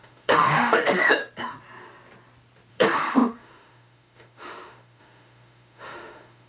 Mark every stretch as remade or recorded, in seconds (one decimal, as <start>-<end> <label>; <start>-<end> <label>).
0.0-1.2 remade; 1.2-2.7 recorded; 2.7-6.5 remade